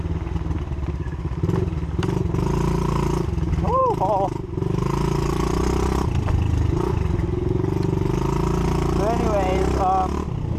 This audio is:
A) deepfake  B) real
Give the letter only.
B